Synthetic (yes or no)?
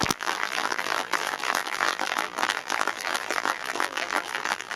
yes